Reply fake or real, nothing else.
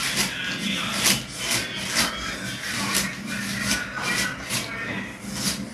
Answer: real